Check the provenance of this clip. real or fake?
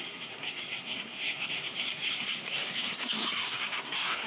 fake